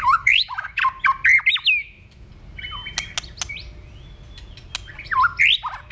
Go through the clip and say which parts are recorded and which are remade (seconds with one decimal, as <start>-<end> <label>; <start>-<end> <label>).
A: 0.0-0.8 remade; 0.8-1.5 recorded; 1.5-2.3 remade; 2.3-5.9 recorded